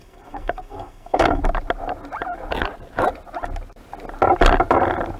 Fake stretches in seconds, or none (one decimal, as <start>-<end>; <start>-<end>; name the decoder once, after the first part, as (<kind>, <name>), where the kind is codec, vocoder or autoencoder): 0.0-1.4 (codec, SNAC)